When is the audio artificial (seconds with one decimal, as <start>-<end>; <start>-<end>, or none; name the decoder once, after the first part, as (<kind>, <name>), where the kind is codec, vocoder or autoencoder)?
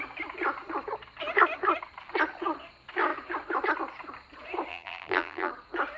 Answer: 4.7-5.5 (vocoder, BigVGAN v2)